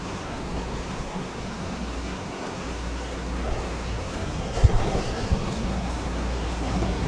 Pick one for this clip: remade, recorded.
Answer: remade